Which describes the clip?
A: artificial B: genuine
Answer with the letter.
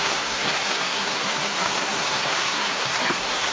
A